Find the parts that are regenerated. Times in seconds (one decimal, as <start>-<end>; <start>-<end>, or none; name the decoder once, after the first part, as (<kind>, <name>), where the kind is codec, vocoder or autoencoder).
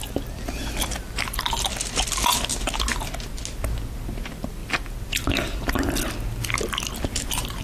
none